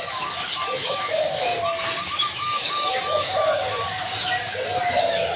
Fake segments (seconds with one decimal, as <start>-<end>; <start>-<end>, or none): 0.0-1.5; 2.0-3.6; 5.0-5.4